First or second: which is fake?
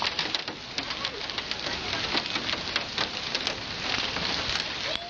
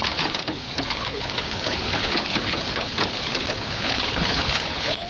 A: second